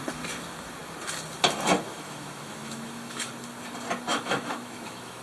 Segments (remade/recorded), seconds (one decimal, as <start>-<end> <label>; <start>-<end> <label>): 0.0-1.9 recorded; 1.9-3.3 remade; 3.3-4.1 recorded; 4.1-5.2 remade